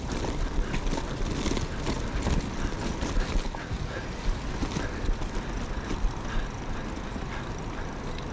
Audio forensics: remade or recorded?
recorded